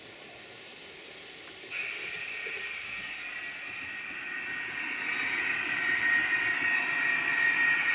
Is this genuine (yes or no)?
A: yes